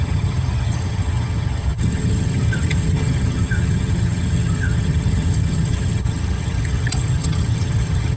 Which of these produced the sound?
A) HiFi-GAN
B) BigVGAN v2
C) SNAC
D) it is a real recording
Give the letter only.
A